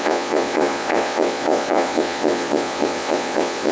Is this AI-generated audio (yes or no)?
yes